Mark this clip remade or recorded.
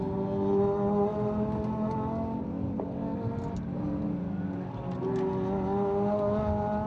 recorded